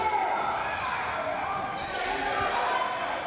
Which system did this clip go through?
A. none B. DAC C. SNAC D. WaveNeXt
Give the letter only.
A